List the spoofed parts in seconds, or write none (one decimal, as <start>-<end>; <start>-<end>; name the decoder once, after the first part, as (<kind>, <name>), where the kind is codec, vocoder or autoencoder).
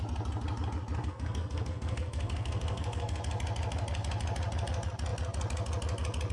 1.0-3.2 (codec, SNAC)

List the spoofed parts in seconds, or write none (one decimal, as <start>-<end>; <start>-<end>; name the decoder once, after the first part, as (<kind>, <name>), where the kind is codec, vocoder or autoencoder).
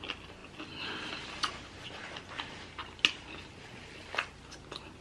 none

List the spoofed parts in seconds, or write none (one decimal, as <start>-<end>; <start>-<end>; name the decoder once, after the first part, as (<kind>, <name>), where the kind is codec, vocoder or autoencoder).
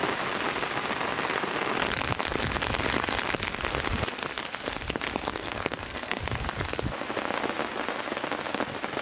5.3-6.2 (codec, SNAC)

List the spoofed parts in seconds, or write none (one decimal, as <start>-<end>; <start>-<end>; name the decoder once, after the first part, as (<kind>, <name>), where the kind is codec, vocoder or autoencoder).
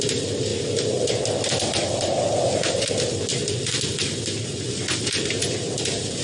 none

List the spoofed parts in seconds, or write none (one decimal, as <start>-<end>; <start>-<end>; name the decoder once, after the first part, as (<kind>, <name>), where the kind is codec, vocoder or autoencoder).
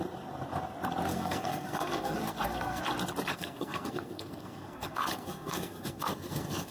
1.1-2.8 (codec, SNAC); 3.3-6.7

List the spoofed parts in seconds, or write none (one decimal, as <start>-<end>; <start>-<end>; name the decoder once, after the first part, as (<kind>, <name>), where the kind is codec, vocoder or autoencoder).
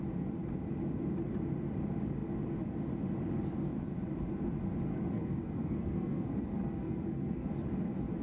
4.9-7.5 (codec, SNAC)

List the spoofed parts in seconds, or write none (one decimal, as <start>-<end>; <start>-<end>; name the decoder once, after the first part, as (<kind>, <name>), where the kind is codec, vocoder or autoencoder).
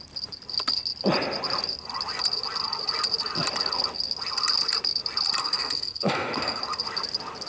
5.4-6.6 (codec, SNAC)